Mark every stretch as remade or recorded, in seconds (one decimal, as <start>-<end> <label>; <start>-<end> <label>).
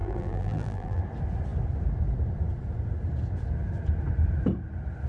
0.0-1.0 remade; 1.0-5.1 recorded